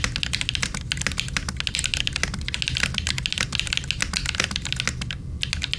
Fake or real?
real